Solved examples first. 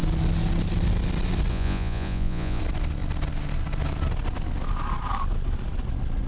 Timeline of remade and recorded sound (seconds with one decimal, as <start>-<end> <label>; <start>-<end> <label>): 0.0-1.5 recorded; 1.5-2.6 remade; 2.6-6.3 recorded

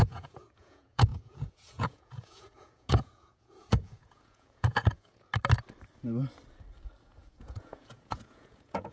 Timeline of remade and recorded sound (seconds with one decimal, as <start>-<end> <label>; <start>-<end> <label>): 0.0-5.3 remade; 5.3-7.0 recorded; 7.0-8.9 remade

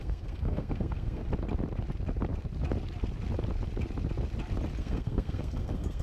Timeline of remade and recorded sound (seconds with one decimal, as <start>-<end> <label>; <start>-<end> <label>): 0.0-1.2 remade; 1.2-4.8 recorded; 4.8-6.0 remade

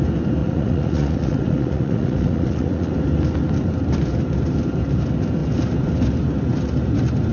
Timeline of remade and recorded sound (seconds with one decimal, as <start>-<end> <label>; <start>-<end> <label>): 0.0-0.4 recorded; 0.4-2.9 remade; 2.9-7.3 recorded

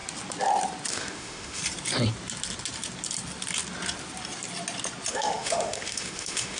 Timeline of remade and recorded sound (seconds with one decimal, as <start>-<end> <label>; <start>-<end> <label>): 0.0-0.9 recorded; 0.9-1.6 remade; 1.6-5.1 recorded; 5.1-6.6 remade

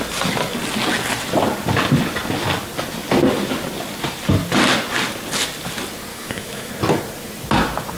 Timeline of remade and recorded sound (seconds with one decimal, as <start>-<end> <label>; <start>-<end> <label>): 0.0-6.1 recorded; 6.1-6.7 remade; 6.7-8.0 recorded